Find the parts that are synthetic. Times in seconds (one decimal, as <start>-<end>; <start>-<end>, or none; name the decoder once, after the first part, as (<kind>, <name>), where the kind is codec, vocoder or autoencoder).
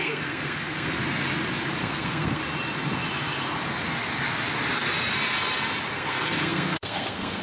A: 0.0-1.0 (codec, SNAC); 1.8-2.4; 5.9-7.4